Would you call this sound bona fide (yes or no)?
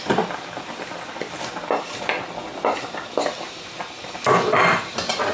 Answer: yes